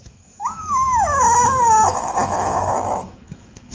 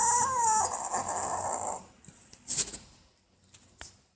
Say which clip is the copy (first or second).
first